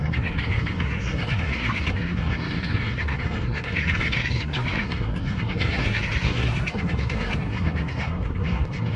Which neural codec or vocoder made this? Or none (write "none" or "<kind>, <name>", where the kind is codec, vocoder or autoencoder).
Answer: codec, SNAC